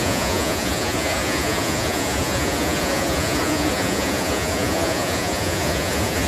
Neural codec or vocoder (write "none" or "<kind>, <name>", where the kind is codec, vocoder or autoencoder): vocoder, Vocos